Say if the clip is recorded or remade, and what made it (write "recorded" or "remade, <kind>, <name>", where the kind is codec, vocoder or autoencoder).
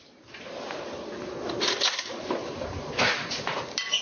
recorded